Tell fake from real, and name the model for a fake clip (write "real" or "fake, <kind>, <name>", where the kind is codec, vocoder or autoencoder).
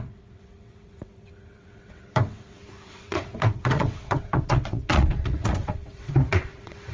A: fake, vocoder, WaveNeXt